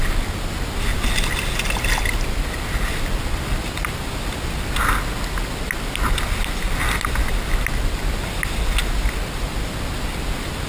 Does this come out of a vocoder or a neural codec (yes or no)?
no